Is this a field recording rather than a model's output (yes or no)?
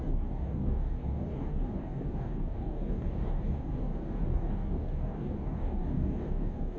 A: no